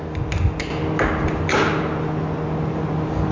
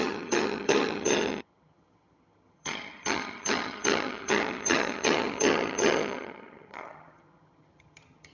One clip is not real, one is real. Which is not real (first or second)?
second